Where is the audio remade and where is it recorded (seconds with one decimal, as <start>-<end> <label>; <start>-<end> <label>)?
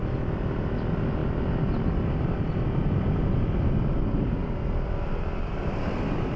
0.0-6.4 recorded